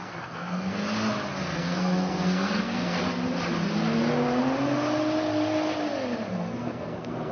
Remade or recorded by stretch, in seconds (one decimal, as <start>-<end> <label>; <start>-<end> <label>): 0.0-0.8 remade; 0.8-1.4 recorded; 1.4-3.0 remade; 3.0-6.3 recorded; 6.3-7.3 remade